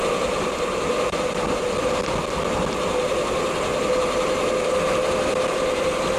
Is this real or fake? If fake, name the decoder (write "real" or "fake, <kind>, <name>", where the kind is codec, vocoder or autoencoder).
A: real